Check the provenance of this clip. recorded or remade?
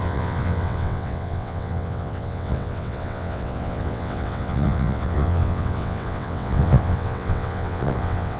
remade